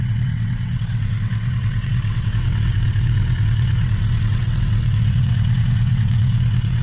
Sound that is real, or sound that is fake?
fake